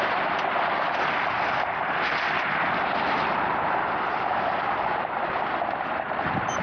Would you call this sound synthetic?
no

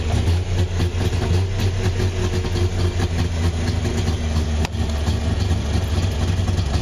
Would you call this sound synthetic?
no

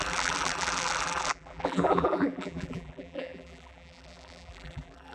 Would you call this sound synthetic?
yes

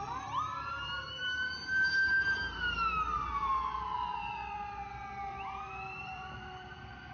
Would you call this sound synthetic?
yes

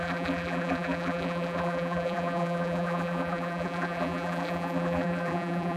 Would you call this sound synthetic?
yes